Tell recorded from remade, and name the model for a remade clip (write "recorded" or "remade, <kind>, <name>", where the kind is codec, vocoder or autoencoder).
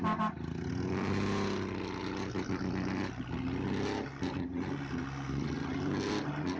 recorded